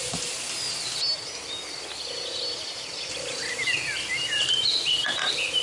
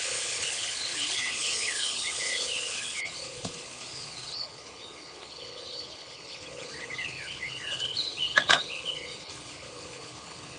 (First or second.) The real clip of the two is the first